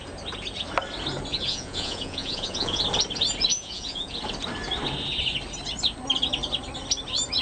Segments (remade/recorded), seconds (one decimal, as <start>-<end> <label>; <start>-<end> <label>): 0.0-1.3 recorded; 1.3-2.8 remade; 2.8-3.5 recorded; 3.5-4.2 remade; 4.2-7.4 recorded